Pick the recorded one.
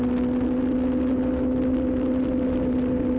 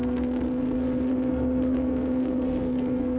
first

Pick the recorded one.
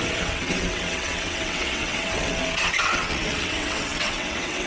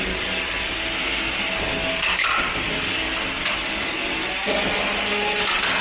second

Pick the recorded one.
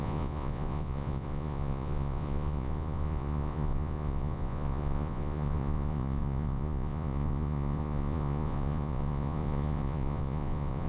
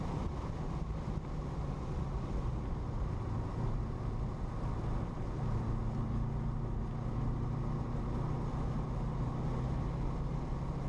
second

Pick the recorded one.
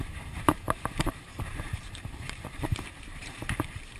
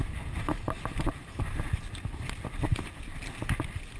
second